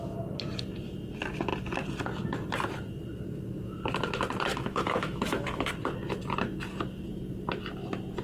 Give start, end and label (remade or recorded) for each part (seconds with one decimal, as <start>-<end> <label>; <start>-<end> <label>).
0.0-4.5 recorded; 4.5-5.7 remade; 5.7-8.2 recorded